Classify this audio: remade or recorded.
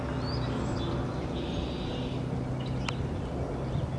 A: recorded